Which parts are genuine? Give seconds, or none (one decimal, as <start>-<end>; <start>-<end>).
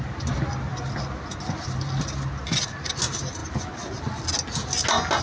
0.0-2.4; 2.9-5.2